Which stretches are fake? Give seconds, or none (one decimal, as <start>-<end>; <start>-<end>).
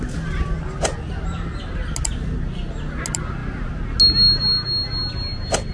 none